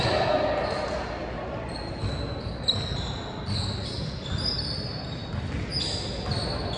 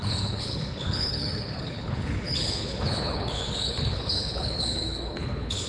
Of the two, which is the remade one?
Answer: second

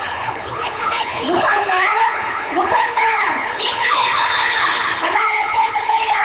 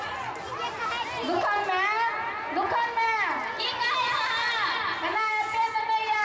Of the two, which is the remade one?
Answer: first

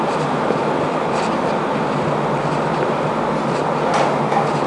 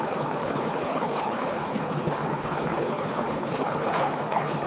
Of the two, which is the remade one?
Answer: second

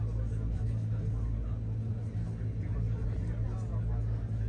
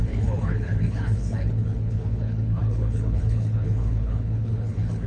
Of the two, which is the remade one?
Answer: second